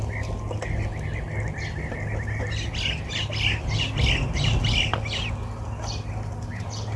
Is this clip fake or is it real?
real